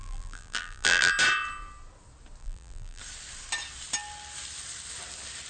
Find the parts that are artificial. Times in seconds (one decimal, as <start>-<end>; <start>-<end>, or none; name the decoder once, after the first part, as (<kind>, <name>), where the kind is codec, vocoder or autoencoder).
0.0-1.1 (vocoder, BigVGAN v2); 2.4-3.0